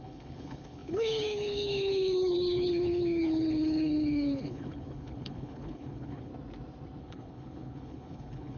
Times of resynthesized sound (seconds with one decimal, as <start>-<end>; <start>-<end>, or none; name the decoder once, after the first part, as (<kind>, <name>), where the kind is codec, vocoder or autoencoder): 0.0-6.3 (codec, HILCodec); 7.0-8.6

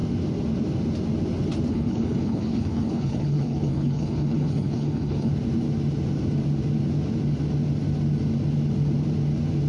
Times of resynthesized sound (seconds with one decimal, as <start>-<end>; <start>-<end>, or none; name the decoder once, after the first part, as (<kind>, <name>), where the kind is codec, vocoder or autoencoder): 1.7-5.3 (codec, HILCodec)